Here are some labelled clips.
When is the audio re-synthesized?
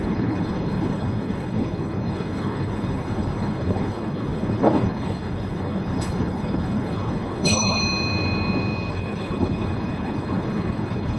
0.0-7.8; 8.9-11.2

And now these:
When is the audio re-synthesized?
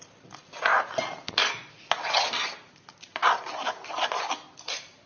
none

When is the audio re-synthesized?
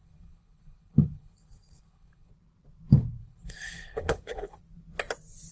0.0-2.3; 3.2-4.6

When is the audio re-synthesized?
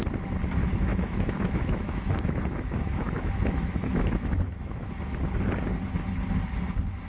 0.6-4.9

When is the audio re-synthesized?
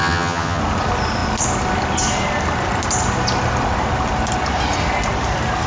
0.0-0.6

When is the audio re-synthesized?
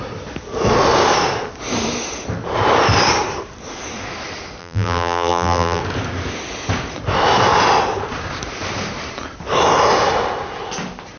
4.6-5.8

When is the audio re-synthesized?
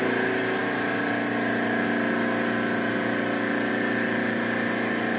none